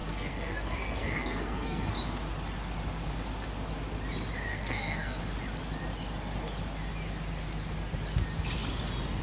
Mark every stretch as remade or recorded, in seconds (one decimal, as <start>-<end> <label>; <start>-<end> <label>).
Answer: 0.0-1.9 remade; 1.9-4.5 recorded; 4.5-5.2 remade; 5.2-9.2 recorded